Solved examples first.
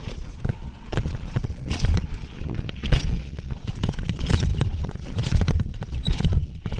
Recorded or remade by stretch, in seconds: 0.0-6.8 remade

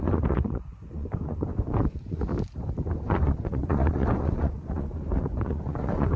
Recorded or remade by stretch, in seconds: 0.0-2.3 remade; 2.3-2.9 recorded; 2.9-6.2 remade

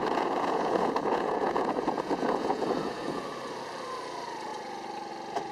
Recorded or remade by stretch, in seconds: 0.0-3.3 remade; 3.3-5.5 recorded

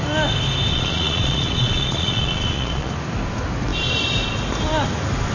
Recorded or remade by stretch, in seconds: 0.0-0.7 recorded; 0.7-2.9 remade; 2.9-5.3 recorded

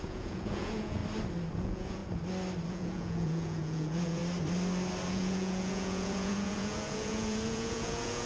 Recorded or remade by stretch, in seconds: 0.0-1.0 remade; 1.0-1.6 recorded; 1.6-2.0 remade; 2.0-2.7 recorded; 2.7-4.2 remade; 4.2-5.1 recorded; 5.1-8.3 remade

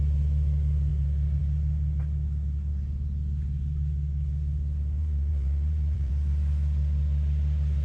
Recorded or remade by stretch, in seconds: 0.0-5.0 recorded; 5.0-6.1 remade; 6.1-7.8 recorded